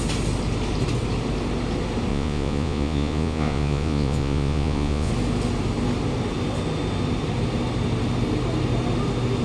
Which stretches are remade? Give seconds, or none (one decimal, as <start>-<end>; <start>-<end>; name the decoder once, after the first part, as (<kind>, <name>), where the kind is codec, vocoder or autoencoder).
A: 2.1-5.1 (vocoder, Vocos)